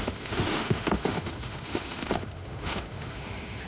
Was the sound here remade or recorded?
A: remade